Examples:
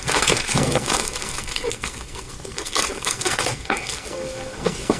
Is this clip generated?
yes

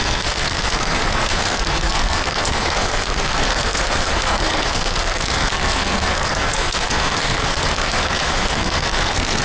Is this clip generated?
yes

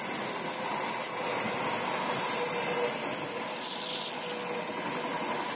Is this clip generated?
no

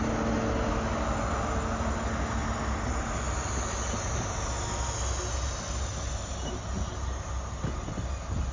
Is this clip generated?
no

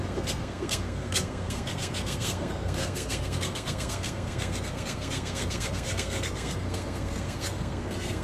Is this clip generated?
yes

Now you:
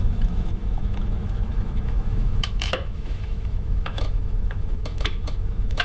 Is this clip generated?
yes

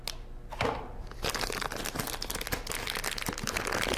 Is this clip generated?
no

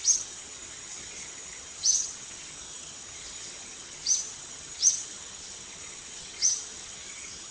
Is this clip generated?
yes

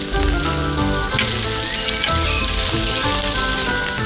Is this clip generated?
no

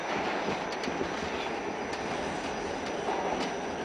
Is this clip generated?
no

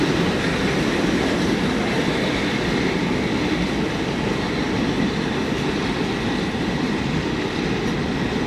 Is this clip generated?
no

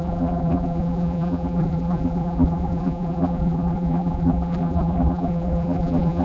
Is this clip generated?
yes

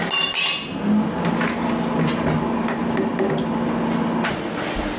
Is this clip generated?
no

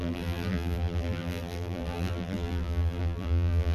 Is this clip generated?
yes